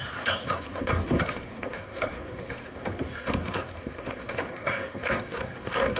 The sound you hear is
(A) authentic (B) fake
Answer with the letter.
B